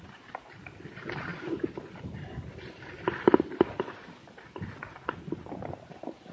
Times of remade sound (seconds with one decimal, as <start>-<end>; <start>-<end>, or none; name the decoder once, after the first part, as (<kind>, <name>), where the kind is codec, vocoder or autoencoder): none